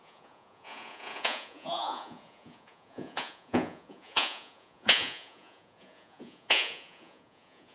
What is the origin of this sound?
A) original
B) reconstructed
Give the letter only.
B